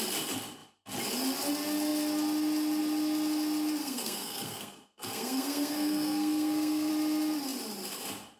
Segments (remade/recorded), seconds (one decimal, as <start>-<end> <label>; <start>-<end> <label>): 0.0-3.8 recorded; 3.8-6.9 remade; 6.9-8.4 recorded